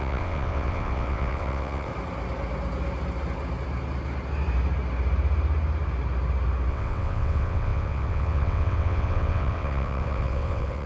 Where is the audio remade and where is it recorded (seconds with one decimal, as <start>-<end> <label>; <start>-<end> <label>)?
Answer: 0.0-1.9 remade; 1.9-6.7 recorded; 6.7-10.9 remade